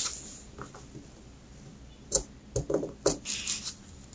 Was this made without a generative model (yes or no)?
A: yes